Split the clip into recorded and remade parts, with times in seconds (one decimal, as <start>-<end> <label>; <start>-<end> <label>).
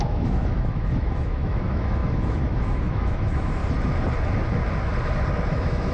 0.0-3.6 remade; 3.6-5.5 recorded; 5.5-5.9 remade